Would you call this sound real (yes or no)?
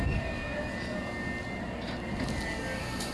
yes